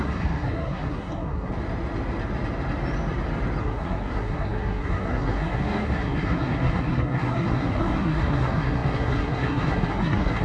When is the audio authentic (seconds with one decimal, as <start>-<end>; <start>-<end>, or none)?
1.5-3.6